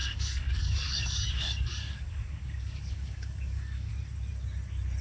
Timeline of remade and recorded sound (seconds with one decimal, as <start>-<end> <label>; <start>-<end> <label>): 0.0-3.9 remade; 3.9-5.0 recorded

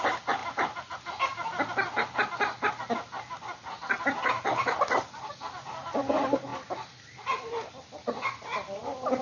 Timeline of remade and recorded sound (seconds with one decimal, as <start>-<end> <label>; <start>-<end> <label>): 0.0-9.2 recorded

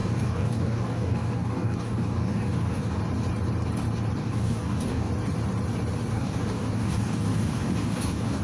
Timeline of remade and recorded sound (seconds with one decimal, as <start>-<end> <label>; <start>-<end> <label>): 0.0-3.0 remade; 3.0-4.2 recorded; 4.2-5.1 remade; 5.1-6.1 recorded; 6.1-8.4 remade

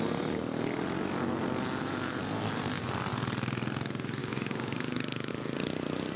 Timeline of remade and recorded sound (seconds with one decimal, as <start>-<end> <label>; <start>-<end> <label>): 0.0-4.2 recorded; 4.2-5.3 remade; 5.3-6.2 recorded

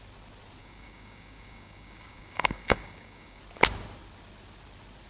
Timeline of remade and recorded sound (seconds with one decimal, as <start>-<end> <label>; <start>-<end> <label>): 0.0-0.6 recorded; 0.6-3.4 remade; 3.4-5.1 recorded

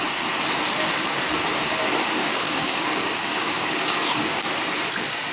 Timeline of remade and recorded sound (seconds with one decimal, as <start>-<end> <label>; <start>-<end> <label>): 0.0-2.2 recorded; 2.2-4.6 remade; 4.6-5.3 recorded

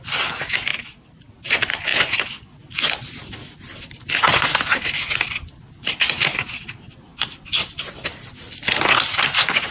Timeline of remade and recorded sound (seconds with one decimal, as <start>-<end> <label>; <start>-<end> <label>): 0.0-9.7 recorded

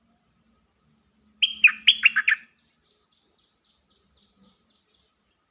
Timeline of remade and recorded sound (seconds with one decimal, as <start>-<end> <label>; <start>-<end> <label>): 0.0-5.5 recorded